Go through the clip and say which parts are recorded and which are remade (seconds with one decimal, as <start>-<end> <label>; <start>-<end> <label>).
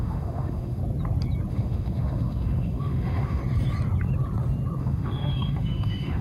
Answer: 0.0-0.8 remade; 0.8-1.5 recorded; 1.5-3.4 remade; 3.4-4.8 recorded; 4.8-6.2 remade